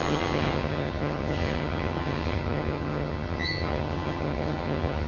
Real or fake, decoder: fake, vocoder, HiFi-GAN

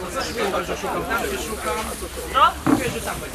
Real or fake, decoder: fake, vocoder, BigVGAN v2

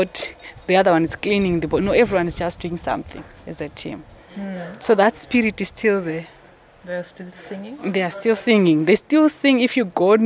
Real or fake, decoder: real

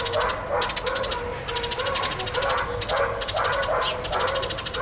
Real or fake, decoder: real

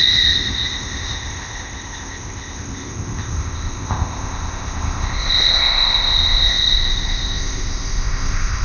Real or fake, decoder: fake, codec, ZipCodec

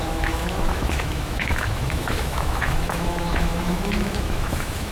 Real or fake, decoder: fake, autoencoder, DAC-VAE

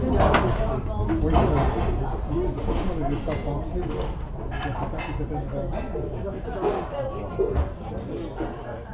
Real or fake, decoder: real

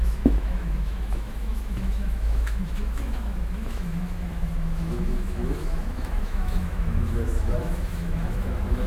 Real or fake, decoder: fake, autoencoder, DAC-VAE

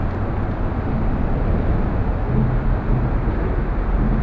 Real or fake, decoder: real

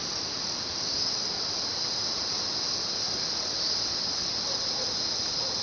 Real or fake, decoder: real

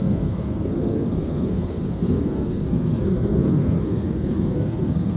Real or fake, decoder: fake, codec, SNAC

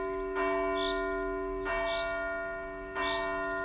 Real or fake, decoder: real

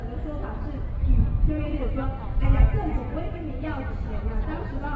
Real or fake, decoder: real